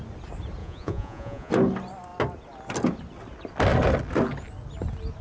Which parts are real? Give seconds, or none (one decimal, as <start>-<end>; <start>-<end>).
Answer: 0.0-0.6; 1.5-5.2